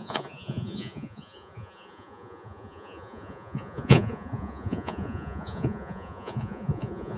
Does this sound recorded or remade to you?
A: remade